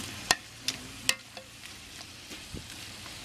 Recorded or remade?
recorded